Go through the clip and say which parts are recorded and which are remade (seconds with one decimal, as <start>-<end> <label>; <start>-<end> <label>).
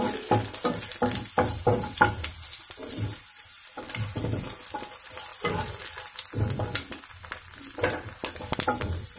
0.0-2.8 recorded; 2.8-3.5 remade; 3.5-8.2 recorded; 8.2-9.2 remade